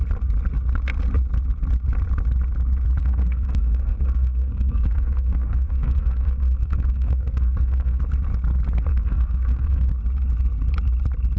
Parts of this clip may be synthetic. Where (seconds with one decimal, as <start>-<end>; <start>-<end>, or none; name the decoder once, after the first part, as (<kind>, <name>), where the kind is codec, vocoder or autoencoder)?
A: 3.0-8.0 (codec, SNAC); 8.9-9.9